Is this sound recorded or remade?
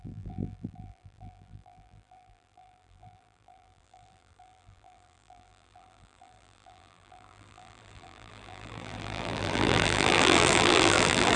remade